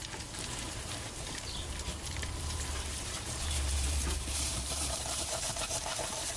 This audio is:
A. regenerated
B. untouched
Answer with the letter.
A